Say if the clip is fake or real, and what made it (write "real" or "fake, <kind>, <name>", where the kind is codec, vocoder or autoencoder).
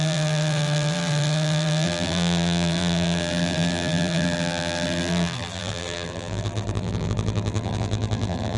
fake, vocoder, BigVGAN v2